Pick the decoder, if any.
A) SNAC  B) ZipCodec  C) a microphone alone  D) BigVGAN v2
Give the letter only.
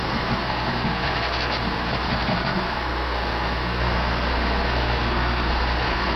A